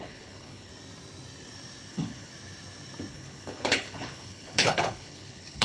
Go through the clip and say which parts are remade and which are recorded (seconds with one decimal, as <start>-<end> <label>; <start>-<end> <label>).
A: 0.0-0.7 remade; 0.7-1.9 recorded; 1.9-2.3 remade; 2.3-3.1 recorded; 3.1-5.6 remade